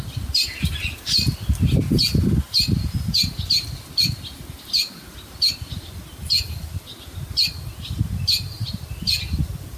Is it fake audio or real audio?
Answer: real